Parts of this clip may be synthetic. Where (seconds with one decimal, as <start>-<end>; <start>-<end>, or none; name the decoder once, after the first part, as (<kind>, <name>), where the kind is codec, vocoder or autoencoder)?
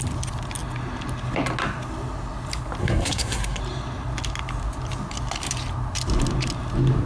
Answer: 2.8-3.6 (codec, SNAC)